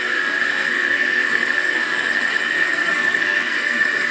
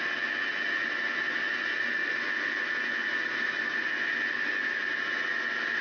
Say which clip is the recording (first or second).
second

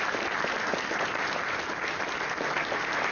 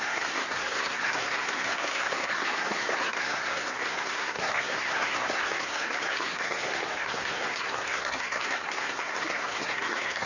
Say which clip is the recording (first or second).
first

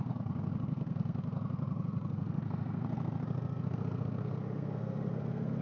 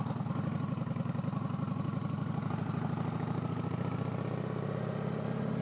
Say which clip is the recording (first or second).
second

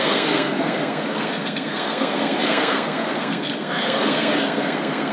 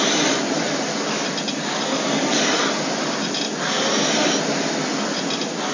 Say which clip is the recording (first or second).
second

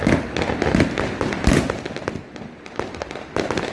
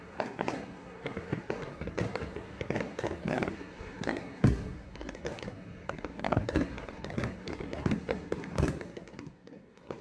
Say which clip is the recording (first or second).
first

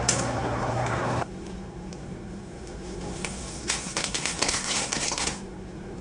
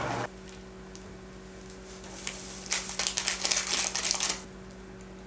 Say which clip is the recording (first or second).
second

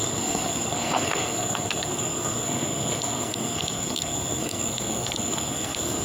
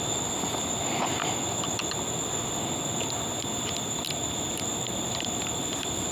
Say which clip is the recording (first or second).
second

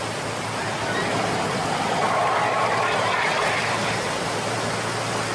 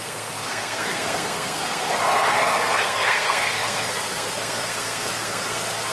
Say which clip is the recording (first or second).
first